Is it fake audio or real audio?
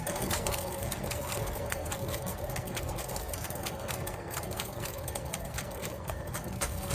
fake